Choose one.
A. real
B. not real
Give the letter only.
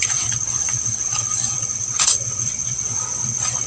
B